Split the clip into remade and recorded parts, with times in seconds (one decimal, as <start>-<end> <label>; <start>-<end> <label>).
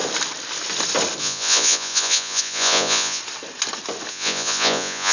0.0-1.2 recorded; 1.2-3.2 remade; 3.2-4.1 recorded; 4.1-5.1 remade